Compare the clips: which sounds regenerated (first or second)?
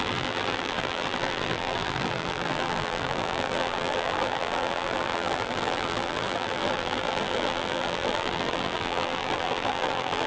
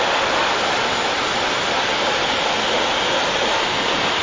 first